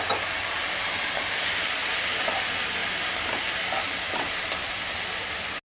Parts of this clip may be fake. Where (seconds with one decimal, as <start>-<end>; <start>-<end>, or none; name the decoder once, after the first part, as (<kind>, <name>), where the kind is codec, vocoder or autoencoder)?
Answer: none